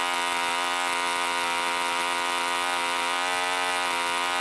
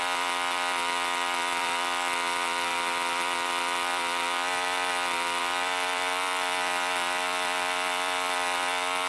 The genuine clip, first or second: first